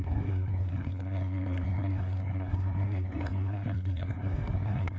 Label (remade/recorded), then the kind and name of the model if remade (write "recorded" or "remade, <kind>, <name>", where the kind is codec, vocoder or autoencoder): remade, codec, SNAC